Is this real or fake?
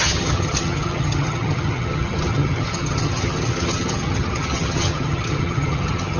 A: fake